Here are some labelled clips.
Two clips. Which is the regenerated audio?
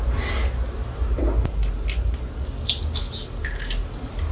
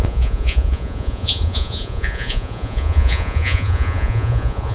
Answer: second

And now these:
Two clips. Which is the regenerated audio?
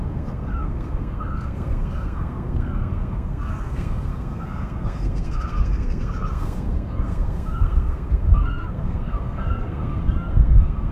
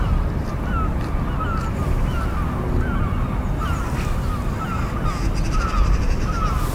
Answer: first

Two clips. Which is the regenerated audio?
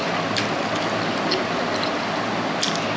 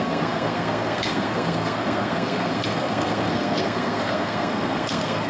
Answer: second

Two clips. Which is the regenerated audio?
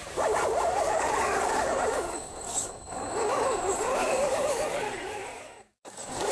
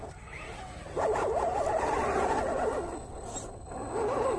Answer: first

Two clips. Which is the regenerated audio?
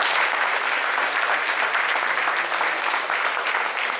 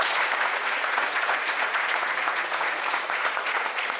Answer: second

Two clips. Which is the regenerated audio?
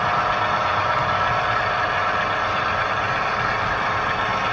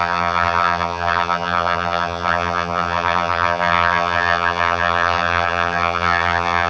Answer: second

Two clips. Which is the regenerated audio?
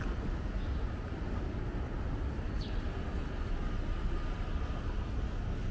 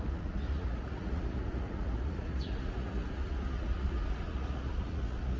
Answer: second